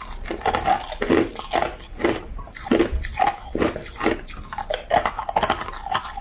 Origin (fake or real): real